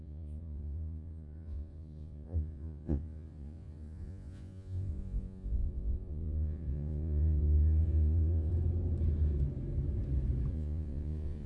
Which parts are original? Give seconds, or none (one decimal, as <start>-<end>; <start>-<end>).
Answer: 8.5-10.5